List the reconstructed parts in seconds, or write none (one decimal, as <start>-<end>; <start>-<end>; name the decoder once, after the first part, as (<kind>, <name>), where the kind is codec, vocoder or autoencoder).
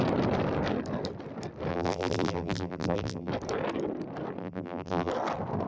1.7-3.3 (vocoder, BigVGAN v2); 4.4-5.1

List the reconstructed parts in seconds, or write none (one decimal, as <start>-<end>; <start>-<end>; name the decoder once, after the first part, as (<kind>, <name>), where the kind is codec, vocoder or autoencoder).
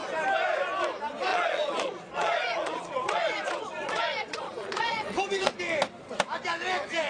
1.3-5.6 (vocoder, Vocos)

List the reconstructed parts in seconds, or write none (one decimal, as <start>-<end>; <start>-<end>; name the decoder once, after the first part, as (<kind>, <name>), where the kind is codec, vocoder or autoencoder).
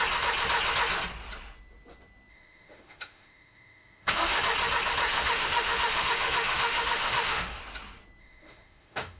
2.3-4.4 (autoencoder, DAC-VAE); 5.1-7.6; 8.2-9.2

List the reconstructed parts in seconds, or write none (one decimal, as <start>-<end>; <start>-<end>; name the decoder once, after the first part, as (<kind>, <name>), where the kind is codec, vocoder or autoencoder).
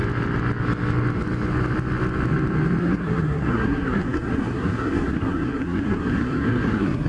2.8-7.1 (codec, SNAC)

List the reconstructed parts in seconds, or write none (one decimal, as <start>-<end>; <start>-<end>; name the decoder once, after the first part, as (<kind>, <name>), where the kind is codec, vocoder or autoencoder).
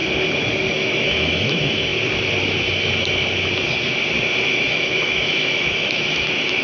0.7-1.9 (autoencoder, DAC-VAE); 4.4-6.6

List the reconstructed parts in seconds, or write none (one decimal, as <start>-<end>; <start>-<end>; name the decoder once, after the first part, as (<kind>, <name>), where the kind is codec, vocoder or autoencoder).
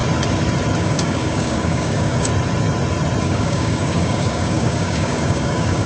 0.8-2.3 (codec, DAC); 3.2-5.9